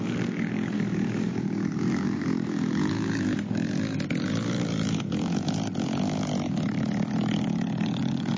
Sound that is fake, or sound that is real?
fake